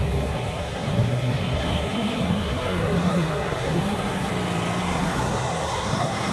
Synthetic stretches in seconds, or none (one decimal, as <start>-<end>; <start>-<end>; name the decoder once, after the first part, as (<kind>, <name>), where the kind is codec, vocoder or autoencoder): 0.0-4.3 (codec, SNAC); 4.8-6.3